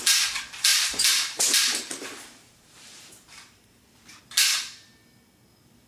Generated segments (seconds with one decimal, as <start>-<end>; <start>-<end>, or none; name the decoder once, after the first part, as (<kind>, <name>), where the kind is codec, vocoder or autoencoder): 0.7-4.2 (vocoder, BigVGAN v2)